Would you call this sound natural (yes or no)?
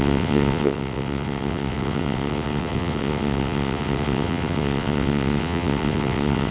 no